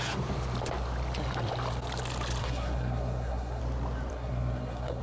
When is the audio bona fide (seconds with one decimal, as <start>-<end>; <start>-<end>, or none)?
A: 0.0-2.4; 3.6-4.1